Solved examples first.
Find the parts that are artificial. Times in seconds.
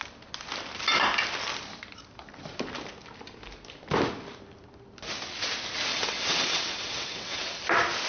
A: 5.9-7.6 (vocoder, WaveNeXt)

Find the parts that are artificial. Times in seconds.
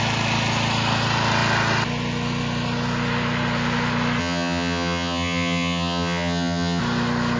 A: 4.2-6.8 (vocoder, HiFi-GAN)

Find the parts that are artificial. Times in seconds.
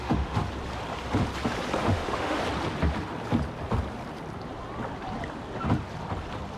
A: 0.0-0.4 (autoencoder, DAC-VAE); 1.8-2.4